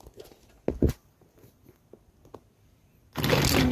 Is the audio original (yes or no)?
yes